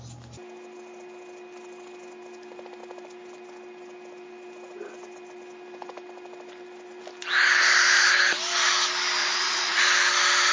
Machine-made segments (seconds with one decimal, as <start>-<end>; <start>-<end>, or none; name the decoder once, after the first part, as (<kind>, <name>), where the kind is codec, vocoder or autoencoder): 9.2-9.8 (vocoder, Vocos)